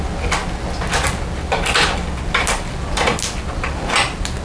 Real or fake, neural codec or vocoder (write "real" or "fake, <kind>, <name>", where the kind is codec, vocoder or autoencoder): real